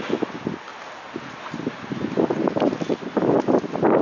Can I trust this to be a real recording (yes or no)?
yes